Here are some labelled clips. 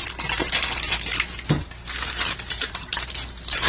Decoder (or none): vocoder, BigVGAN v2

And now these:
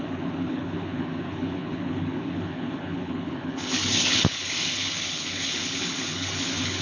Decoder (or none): codec, HILCodec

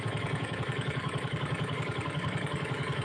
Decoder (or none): codec, DAC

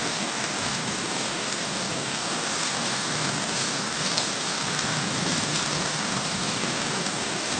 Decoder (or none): codec, DAC